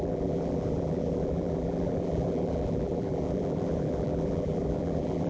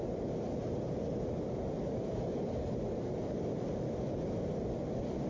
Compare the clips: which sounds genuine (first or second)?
second